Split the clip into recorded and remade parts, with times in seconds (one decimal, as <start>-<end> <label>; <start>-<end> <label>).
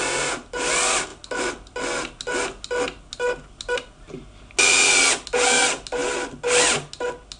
0.0-7.4 recorded